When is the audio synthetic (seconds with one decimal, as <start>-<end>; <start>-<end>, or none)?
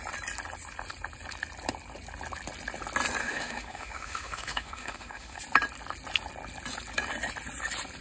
3.2-5.4